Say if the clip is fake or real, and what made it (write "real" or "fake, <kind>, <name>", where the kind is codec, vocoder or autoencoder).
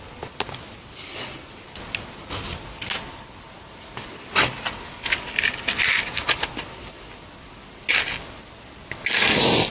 real